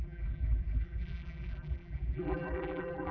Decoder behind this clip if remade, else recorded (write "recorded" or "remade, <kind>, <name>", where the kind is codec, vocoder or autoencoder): remade, vocoder, BigVGAN v2